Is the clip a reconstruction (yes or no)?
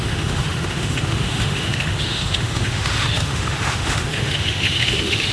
yes